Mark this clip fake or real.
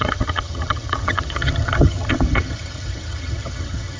fake